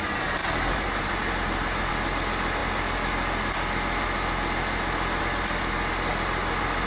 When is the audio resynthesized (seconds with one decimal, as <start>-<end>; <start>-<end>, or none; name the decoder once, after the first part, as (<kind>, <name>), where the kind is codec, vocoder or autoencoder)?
0.4-1.9 (vocoder, BigVGAN v2)

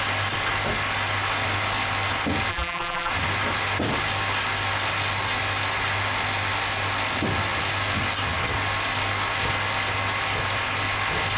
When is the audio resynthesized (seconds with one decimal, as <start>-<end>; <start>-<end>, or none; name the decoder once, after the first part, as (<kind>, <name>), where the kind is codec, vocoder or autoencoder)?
2.5-3.1 (vocoder, BigVGAN v2)

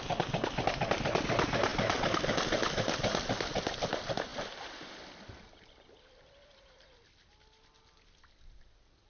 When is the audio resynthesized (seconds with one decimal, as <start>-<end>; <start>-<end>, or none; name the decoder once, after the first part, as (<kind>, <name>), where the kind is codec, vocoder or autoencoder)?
none

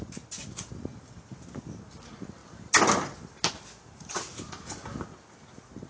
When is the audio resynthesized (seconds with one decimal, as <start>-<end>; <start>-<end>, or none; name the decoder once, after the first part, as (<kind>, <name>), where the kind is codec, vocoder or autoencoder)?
0.9-1.8 (vocoder, BigVGAN v2)

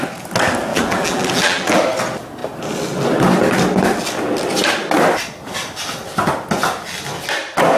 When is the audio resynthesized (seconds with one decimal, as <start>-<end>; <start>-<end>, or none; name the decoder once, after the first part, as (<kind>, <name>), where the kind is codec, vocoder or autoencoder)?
0.7-1.8 (vocoder, BigVGAN v2)